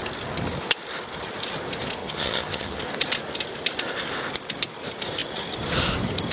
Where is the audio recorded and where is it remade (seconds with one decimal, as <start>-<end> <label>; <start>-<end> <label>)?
0.0-2.0 recorded; 2.0-2.8 remade; 2.8-6.3 recorded